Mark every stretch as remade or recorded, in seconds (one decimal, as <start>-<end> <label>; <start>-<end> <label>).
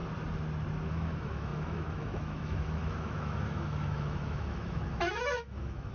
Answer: 0.0-0.9 recorded; 0.9-5.9 remade